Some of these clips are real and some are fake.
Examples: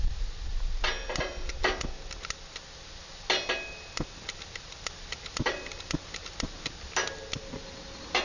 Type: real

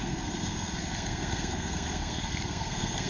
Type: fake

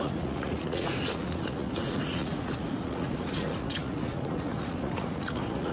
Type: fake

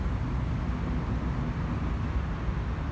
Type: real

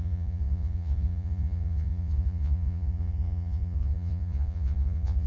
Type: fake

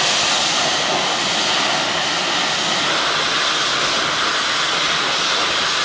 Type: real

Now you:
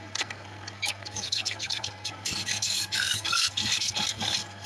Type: fake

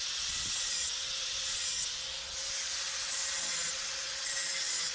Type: fake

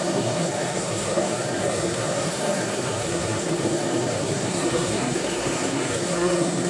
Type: fake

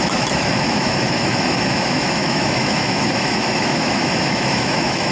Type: fake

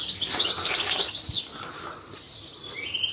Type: real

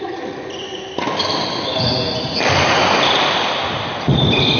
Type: real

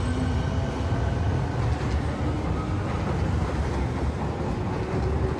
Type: real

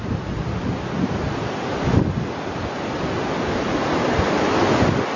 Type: real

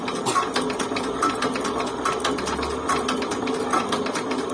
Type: real